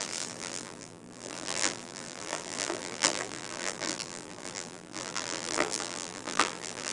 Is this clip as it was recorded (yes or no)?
no